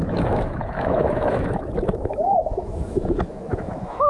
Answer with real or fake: fake